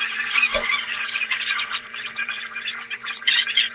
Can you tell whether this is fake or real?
fake